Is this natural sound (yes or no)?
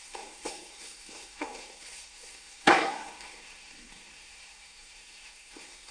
no